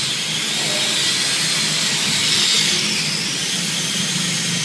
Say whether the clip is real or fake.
real